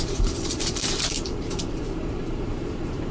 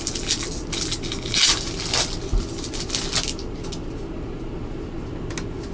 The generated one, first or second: first